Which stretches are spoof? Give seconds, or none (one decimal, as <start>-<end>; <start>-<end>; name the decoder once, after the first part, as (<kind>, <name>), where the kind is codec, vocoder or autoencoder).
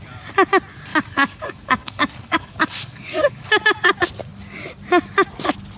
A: 0.9-3.5 (codec, DAC)